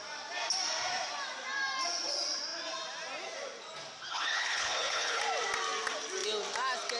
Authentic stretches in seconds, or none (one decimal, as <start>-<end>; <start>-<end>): 0.0-4.1; 5.2-7.0